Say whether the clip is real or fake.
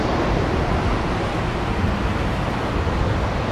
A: real